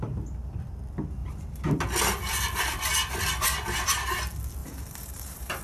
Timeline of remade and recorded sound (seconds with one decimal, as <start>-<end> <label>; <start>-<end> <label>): 0.0-4.6 recorded; 4.6-5.6 remade